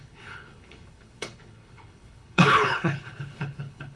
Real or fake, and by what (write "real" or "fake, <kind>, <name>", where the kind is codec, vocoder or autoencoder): fake, codec, HILCodec